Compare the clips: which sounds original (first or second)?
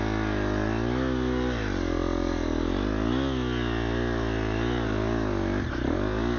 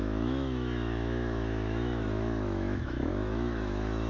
first